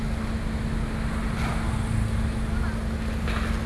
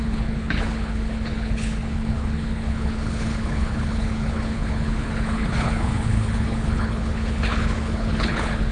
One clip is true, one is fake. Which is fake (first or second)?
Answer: second